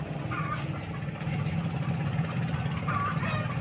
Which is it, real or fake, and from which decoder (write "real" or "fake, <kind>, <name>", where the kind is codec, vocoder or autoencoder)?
real